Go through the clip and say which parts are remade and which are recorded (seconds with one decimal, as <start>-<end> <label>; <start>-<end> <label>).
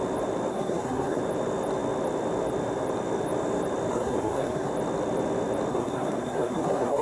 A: 0.0-0.5 recorded; 0.5-1.2 remade; 1.2-3.9 recorded; 3.9-4.7 remade; 4.7-5.7 recorded; 5.7-7.0 remade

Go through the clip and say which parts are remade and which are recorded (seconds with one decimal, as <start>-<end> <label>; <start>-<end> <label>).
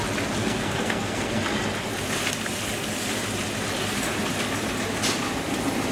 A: 0.0-0.4 recorded; 0.4-1.4 remade; 1.4-5.9 recorded